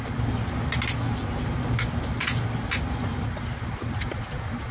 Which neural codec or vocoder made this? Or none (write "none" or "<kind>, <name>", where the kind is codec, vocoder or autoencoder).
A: none